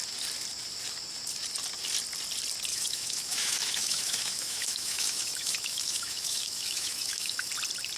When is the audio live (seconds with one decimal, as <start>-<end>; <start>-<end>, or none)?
0.0-2.7; 7.5-8.0